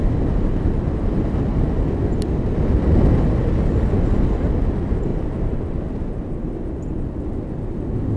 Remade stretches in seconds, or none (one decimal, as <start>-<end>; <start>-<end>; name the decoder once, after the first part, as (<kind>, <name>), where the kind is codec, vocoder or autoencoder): none